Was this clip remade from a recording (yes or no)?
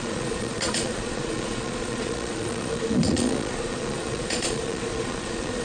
yes